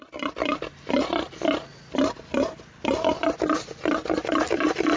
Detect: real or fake real